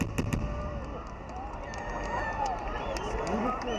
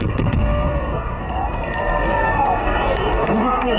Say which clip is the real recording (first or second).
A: first